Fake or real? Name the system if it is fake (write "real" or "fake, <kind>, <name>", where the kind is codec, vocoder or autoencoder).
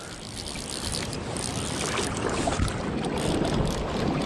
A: real